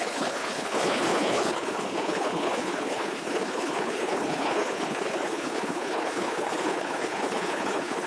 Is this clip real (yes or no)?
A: no